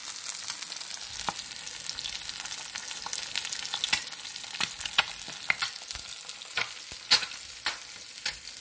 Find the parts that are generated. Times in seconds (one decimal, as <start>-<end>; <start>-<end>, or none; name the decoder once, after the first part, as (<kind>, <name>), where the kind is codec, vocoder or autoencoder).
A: none